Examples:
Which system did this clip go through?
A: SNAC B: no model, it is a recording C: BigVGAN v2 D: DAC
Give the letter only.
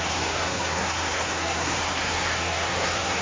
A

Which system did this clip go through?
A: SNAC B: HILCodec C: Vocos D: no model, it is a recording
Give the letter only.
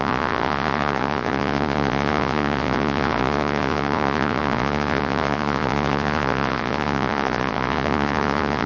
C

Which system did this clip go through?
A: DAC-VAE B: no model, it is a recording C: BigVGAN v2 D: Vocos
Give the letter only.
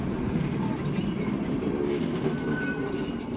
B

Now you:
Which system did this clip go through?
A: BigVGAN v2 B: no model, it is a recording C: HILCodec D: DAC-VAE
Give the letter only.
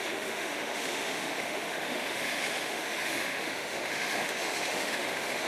D